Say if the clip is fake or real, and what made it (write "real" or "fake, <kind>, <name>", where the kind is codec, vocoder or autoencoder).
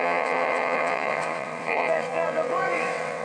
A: fake, vocoder, WaveNeXt